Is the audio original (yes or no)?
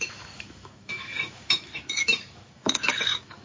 no